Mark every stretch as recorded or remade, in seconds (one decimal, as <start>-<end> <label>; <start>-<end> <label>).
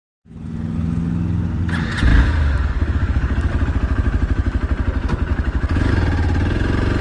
0.0-2.1 recorded; 2.1-3.5 remade; 3.5-5.3 recorded; 5.3-5.9 remade; 5.9-7.0 recorded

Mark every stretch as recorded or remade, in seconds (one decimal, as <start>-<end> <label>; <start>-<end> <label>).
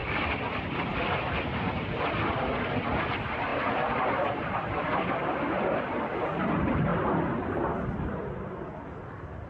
0.0-0.5 recorded; 0.5-9.5 remade